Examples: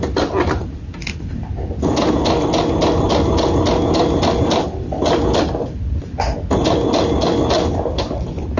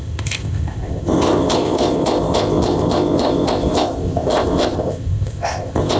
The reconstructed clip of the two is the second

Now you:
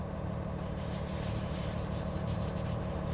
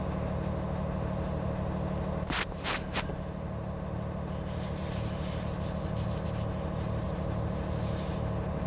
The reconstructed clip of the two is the first